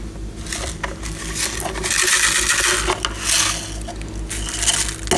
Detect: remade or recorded recorded